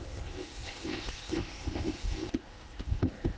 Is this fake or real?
fake